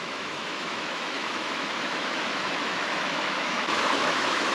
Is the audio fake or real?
fake